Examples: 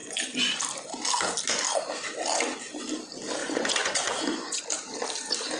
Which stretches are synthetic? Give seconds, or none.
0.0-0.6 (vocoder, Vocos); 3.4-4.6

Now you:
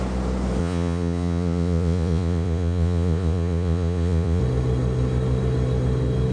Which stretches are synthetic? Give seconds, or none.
0.6-4.4 (vocoder, Vocos)

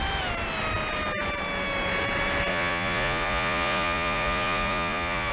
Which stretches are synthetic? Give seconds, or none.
2.5-5.3 (vocoder, Vocos)

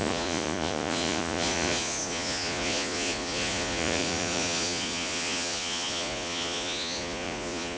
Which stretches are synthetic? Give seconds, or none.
0.0-7.8 (vocoder, Vocos)